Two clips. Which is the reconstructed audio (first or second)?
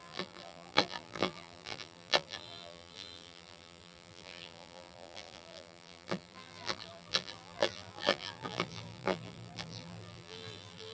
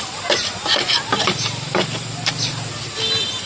first